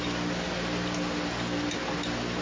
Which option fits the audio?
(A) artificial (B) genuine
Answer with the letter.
B